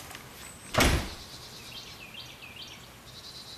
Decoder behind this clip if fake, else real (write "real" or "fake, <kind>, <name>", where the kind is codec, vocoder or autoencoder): real